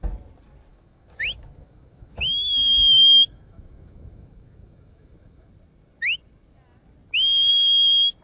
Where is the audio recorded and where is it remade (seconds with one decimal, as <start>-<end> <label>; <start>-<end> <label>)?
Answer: 0.0-0.7 recorded; 0.7-5.5 remade; 5.5-8.2 recorded